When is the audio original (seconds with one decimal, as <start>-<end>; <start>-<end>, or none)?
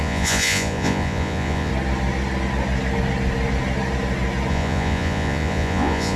1.7-4.5